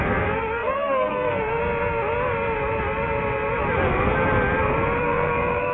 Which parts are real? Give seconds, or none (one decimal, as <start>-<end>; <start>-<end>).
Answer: 1.6-5.0